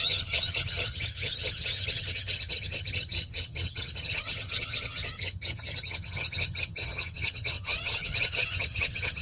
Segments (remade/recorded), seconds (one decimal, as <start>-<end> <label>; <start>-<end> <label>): 0.0-9.2 remade